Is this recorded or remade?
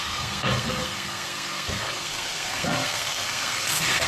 remade